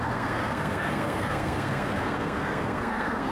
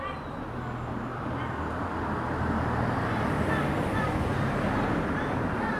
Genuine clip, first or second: second